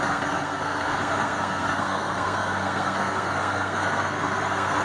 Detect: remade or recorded remade